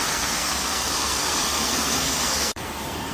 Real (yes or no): no